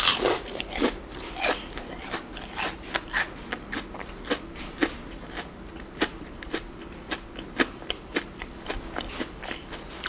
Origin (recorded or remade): recorded